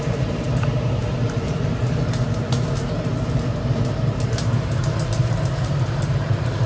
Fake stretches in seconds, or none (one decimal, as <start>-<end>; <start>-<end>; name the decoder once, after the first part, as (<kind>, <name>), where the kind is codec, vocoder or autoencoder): 0.0-6.7 (vocoder, BigVGAN v2)